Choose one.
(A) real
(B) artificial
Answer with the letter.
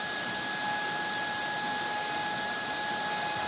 A